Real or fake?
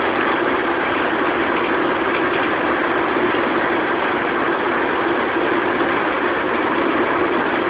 real